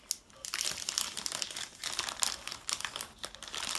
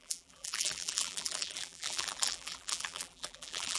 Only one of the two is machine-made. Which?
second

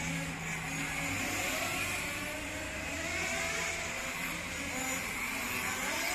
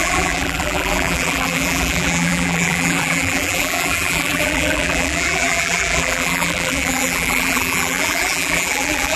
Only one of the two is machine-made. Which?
second